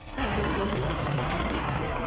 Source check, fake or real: fake